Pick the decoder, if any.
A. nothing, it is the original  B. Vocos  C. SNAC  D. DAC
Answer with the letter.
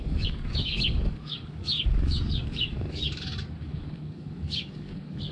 D